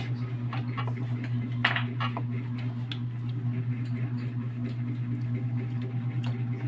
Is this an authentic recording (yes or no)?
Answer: yes